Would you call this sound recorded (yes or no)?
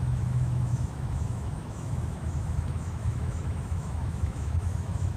no